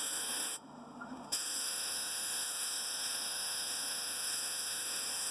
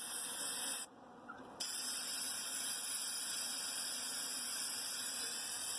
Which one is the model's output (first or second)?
first